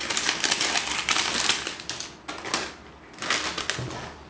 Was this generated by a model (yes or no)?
no